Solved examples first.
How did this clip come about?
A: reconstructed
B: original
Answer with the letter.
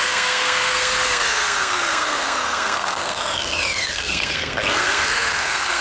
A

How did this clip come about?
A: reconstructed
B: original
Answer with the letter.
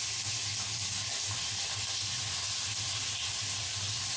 B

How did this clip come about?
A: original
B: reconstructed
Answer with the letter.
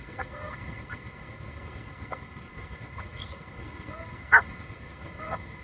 B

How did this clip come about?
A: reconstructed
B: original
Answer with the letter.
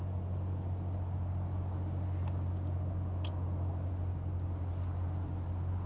B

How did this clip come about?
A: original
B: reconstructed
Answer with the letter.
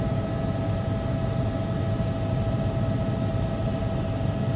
A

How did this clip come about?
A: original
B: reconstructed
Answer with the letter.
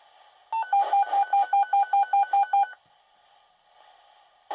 A